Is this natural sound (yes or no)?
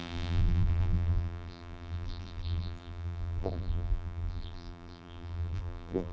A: no